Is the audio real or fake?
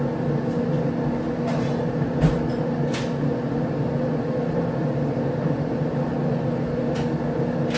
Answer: real